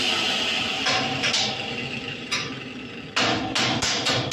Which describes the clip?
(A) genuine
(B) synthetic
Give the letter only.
A